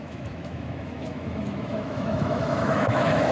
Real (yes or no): no